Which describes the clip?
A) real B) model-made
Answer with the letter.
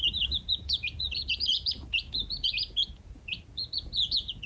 B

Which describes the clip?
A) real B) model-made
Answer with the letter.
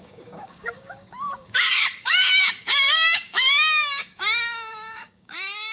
B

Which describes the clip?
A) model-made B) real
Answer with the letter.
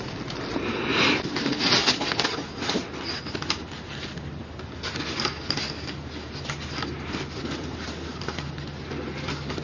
B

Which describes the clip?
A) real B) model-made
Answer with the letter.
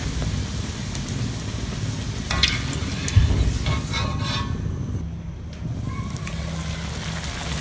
A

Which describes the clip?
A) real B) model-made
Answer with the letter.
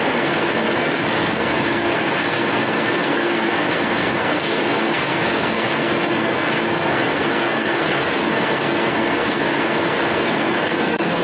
B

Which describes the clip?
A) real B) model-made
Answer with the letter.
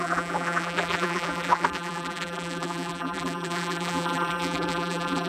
B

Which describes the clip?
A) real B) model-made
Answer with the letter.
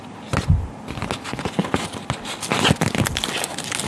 A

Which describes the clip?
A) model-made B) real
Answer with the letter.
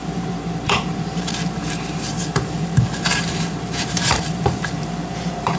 A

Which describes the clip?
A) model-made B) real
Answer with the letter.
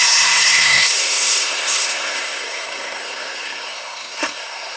A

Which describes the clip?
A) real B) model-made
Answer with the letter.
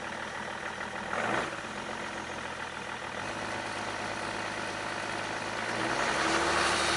A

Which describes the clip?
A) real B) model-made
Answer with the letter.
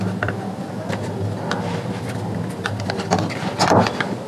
A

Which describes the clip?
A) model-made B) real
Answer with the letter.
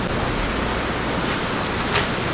B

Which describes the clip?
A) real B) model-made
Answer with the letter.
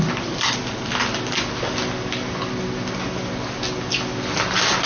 A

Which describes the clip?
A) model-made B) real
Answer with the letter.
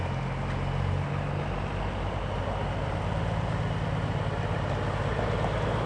B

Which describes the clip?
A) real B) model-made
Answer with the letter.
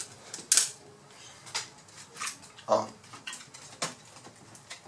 A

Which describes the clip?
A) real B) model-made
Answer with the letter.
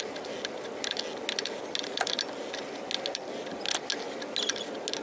A